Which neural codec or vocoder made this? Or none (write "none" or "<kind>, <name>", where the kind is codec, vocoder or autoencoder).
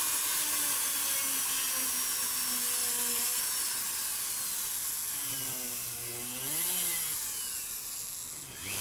none